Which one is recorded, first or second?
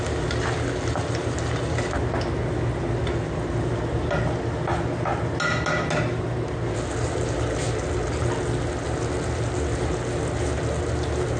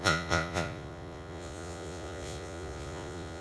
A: first